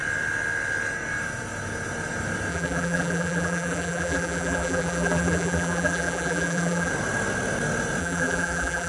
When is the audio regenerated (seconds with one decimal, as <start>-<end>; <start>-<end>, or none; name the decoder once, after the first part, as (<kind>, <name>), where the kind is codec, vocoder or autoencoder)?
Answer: 2.5-6.9 (vocoder, BigVGAN v2); 8.0-8.9